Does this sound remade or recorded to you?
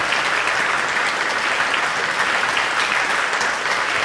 recorded